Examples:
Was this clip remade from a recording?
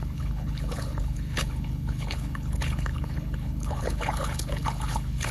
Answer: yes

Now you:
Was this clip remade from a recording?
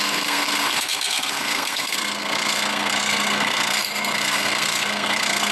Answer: yes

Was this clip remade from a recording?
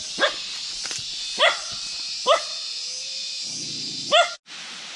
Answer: no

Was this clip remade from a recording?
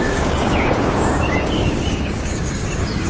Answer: yes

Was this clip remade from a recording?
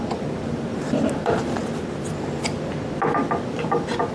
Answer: no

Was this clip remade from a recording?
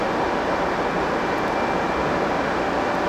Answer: no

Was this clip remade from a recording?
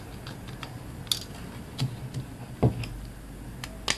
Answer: no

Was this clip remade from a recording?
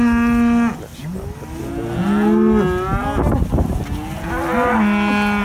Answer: no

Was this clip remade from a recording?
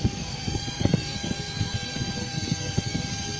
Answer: yes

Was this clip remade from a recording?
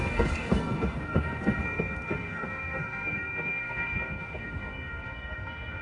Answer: yes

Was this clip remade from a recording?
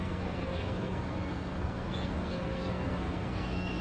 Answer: yes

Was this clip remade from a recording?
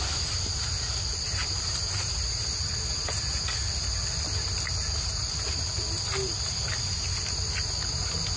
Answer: no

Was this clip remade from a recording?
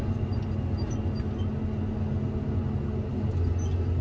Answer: no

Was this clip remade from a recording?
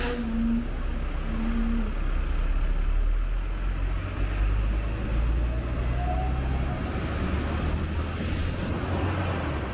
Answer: no